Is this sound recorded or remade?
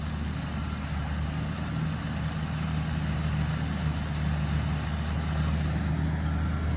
recorded